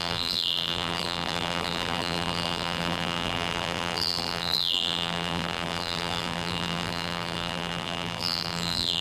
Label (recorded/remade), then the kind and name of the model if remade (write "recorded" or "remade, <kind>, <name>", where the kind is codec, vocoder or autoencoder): remade, vocoder, BigVGAN v2